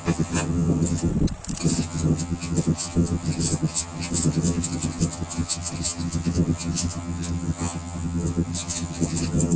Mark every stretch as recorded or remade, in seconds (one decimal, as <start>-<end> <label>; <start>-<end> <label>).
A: 0.0-1.1 remade; 1.1-1.6 recorded; 1.6-9.6 remade